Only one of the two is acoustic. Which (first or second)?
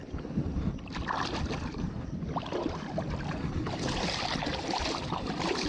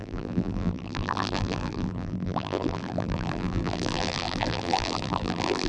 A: first